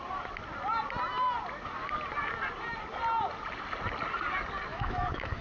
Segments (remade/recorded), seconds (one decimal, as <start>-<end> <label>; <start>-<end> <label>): 0.0-4.7 recorded; 4.7-5.4 remade